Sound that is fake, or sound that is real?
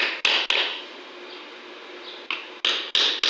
real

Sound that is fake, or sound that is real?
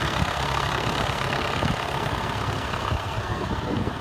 fake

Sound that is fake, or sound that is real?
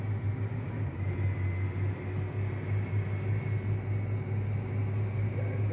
real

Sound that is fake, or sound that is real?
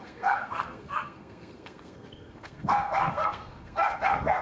fake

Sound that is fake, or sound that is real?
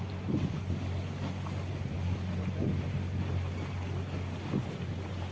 real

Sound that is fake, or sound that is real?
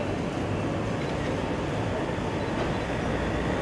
real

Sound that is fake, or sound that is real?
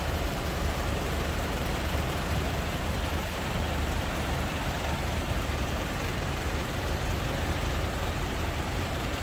fake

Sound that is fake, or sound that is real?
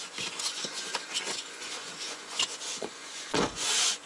fake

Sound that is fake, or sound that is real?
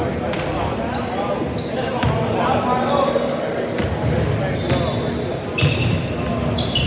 real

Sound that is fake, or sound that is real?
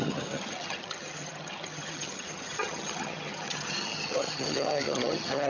fake